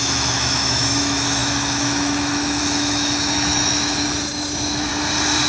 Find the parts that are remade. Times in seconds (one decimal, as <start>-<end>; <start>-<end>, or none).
0.0-4.9